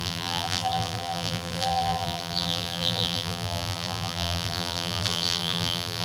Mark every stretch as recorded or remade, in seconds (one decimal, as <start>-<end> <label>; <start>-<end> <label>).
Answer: 0.0-6.0 remade